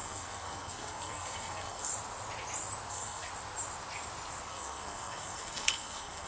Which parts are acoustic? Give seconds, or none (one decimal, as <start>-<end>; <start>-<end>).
1.9-2.9; 3.3-4.5